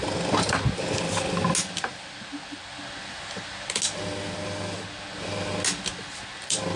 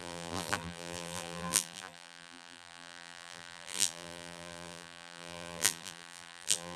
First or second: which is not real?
second